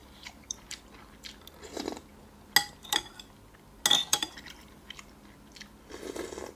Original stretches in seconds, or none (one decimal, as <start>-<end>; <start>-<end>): 0.8-4.1; 5.1-6.5